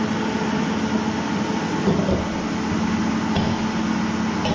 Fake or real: real